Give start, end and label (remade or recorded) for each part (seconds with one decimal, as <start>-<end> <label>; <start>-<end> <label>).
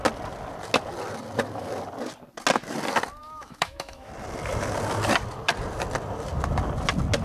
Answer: 0.0-3.2 recorded; 3.2-4.1 remade; 4.1-7.2 recorded